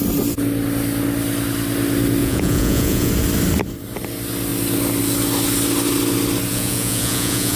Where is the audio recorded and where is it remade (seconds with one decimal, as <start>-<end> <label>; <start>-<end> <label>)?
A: 0.0-2.2 recorded; 2.2-3.1 remade; 3.1-6.5 recorded; 6.5-7.6 remade